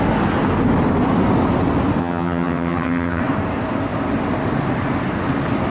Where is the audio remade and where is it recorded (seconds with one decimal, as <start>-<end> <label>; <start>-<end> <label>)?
0.0-2.0 recorded; 2.0-3.2 remade; 3.2-5.7 recorded